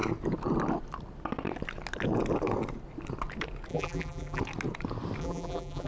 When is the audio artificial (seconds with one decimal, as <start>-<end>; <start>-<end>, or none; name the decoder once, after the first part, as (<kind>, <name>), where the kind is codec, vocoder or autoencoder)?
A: 3.7-4.4 (vocoder, BigVGAN v2); 5.2-5.9